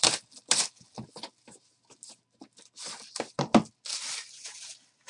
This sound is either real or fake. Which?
real